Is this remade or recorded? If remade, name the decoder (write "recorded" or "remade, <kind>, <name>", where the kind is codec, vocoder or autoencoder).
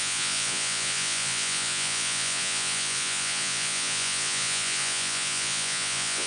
remade, vocoder, Vocos